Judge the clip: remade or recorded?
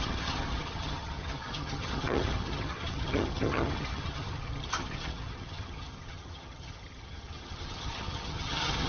remade